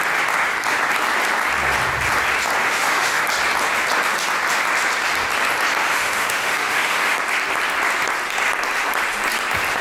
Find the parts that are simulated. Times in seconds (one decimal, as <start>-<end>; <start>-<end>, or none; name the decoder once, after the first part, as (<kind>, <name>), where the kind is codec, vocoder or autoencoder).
2.6-3.2 (autoencoder, DAC-VAE); 5.8-7.2